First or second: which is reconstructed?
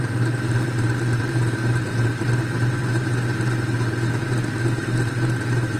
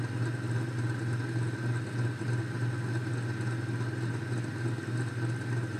first